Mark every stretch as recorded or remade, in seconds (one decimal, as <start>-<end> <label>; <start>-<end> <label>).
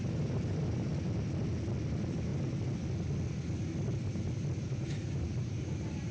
0.0-0.9 remade; 0.9-1.8 recorded; 1.8-2.3 remade; 2.3-4.6 recorded; 4.6-6.1 remade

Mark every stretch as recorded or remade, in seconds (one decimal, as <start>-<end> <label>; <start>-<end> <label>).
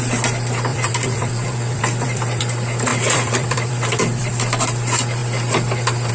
0.0-0.7 recorded; 0.7-2.4 remade; 2.4-2.9 recorded; 2.9-4.3 remade; 4.3-6.1 recorded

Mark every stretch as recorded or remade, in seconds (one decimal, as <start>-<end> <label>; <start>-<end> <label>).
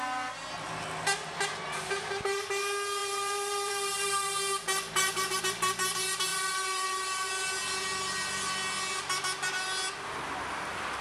0.0-3.0 recorded; 3.0-5.4 remade; 5.4-6.3 recorded; 6.3-7.3 remade; 7.3-11.0 recorded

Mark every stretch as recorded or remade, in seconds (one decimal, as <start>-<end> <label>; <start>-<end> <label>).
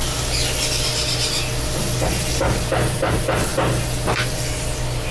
0.0-3.1 recorded; 3.1-3.5 remade; 3.5-4.3 recorded; 4.3-5.1 remade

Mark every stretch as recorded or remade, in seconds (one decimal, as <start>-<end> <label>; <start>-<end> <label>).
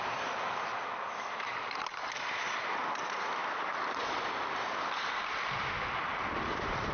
0.0-6.9 recorded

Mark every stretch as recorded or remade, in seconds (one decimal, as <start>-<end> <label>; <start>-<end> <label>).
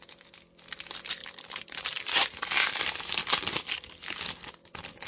0.0-1.2 recorded; 1.2-2.0 remade; 2.0-5.1 recorded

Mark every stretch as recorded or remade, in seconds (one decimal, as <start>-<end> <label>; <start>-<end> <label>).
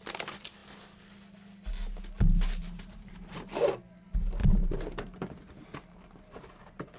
0.0-2.6 recorded; 2.6-3.3 remade; 3.3-4.4 recorded; 4.4-5.5 remade; 5.5-7.0 recorded